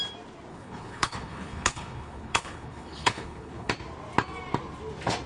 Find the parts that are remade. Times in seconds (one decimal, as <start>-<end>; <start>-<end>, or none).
0.5-3.7